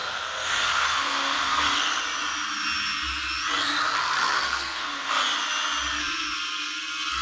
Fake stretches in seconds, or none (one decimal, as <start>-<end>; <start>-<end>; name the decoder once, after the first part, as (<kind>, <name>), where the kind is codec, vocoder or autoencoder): 0.0-2.0 (codec, SNAC); 4.2-5.1; 6.0-7.2